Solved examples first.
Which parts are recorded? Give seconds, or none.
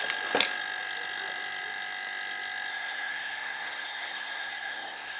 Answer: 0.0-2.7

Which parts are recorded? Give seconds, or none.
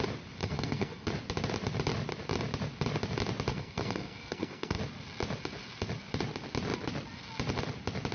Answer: 0.0-0.4; 1.1-3.5; 4.8-8.1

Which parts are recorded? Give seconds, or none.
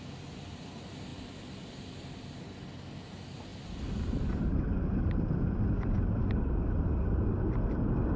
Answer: 0.0-8.2